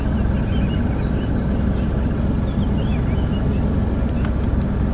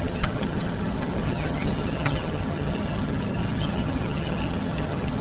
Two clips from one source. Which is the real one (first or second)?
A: first